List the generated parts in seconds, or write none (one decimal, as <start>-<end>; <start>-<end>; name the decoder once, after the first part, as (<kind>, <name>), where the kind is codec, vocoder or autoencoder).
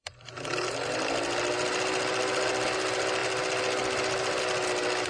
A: none